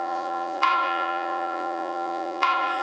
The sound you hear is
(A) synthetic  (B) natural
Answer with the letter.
A